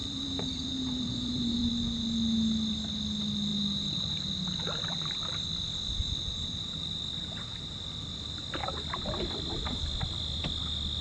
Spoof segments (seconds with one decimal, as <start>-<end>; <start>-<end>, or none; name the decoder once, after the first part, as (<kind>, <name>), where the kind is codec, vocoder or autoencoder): 0.0-1.7 (vocoder, BigVGAN v2)